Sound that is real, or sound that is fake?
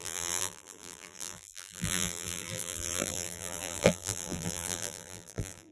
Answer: fake